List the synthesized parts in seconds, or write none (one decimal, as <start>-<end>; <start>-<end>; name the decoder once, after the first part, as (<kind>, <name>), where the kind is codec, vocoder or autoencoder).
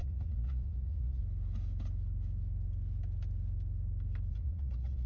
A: 0.0-1.2 (vocoder, Vocos); 4.3-5.1